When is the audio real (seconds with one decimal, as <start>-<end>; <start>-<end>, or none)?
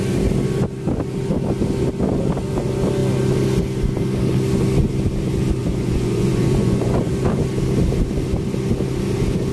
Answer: 0.0-5.6; 7.1-9.5